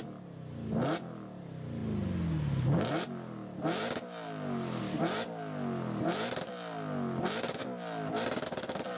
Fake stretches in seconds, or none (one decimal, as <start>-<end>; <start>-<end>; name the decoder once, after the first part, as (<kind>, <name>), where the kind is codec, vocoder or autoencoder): none